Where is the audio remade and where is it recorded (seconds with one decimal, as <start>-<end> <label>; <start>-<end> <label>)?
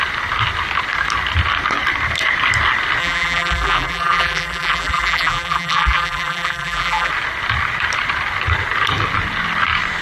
0.0-3.0 recorded; 3.0-7.1 remade; 7.1-10.0 recorded